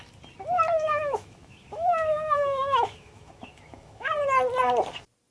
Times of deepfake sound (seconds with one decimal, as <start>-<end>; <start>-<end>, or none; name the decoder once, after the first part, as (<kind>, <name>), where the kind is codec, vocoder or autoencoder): 0.9-4.1 (autoencoder, DAC-VAE)